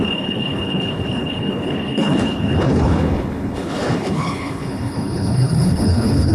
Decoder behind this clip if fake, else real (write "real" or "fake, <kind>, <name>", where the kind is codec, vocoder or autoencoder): fake, codec, HILCodec